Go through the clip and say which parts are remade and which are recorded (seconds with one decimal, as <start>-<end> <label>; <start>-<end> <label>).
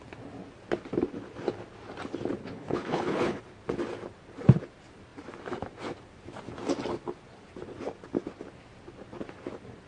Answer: 0.0-2.4 recorded; 2.4-3.4 remade; 3.4-9.9 recorded